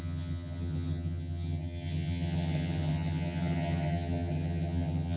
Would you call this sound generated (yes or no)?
yes